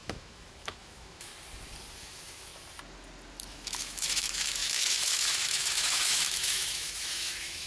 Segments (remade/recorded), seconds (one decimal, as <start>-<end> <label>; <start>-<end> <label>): 0.0-1.3 remade; 1.3-2.0 recorded; 2.0-2.5 remade; 2.5-3.5 recorded; 3.5-7.7 remade